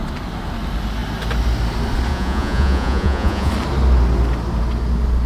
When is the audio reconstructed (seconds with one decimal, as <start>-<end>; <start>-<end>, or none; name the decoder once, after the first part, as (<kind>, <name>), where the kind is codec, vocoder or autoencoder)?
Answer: 2.1-3.5 (vocoder, Vocos)